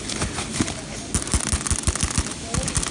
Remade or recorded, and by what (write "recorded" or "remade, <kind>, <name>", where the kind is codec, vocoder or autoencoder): recorded